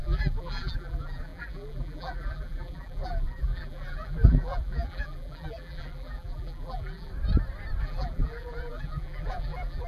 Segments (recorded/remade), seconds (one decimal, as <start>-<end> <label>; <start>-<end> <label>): 0.0-7.1 remade; 7.1-7.8 recorded; 7.8-9.9 remade